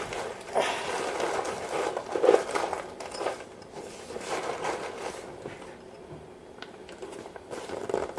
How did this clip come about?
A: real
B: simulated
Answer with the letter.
A